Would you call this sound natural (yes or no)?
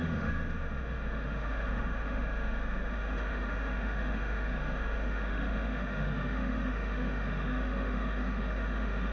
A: no